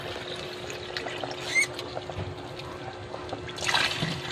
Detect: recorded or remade recorded